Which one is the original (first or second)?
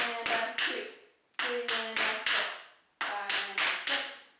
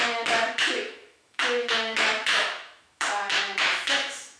first